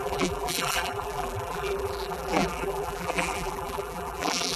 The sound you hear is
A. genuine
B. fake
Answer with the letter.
B